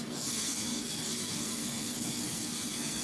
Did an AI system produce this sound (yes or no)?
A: yes